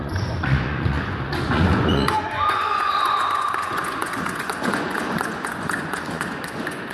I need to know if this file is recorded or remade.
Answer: remade